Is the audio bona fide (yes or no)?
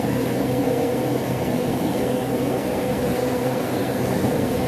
no